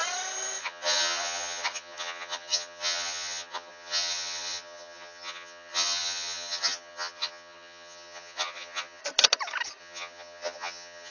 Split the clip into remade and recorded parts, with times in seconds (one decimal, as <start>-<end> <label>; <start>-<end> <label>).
0.0-0.6 recorded; 0.6-9.0 remade; 9.0-9.8 recorded; 9.8-11.1 remade